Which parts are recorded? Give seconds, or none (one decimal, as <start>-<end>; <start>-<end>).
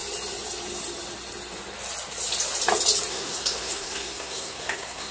0.0-3.1